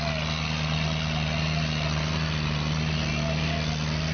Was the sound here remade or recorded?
recorded